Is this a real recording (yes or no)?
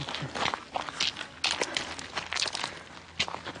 yes